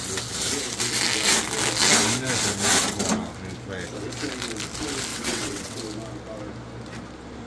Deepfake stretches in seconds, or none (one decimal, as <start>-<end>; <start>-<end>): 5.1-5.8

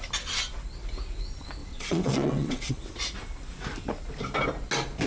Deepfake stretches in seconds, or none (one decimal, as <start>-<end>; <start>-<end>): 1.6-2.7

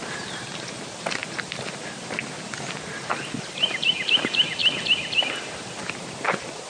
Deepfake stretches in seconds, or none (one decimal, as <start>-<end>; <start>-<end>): none